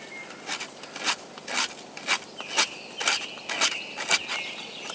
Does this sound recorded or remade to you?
recorded